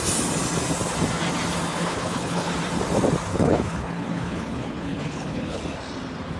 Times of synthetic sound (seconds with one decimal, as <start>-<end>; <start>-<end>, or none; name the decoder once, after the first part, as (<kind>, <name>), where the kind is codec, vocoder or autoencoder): 1.7-2.5 (codec, HILCodec); 3.3-5.6